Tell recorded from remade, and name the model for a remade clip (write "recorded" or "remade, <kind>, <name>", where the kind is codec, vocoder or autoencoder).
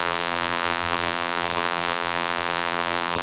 remade, vocoder, BigVGAN v2